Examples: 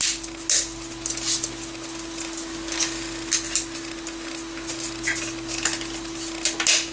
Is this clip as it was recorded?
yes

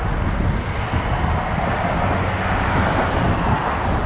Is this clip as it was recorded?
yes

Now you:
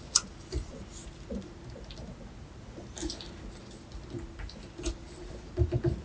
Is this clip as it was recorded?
yes